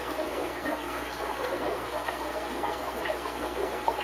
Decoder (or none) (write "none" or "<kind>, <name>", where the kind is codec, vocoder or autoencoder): codec, SNAC